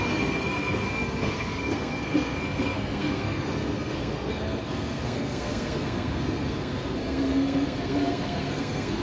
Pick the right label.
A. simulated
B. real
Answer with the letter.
A